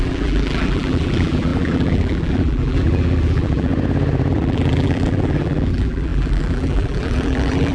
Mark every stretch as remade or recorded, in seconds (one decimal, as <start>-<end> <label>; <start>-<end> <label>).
0.0-3.7 remade; 3.7-4.3 recorded; 4.3-7.7 remade